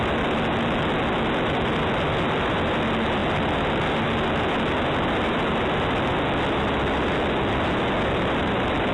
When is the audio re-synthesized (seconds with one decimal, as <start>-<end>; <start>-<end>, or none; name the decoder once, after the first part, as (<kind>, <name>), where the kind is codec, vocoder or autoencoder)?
none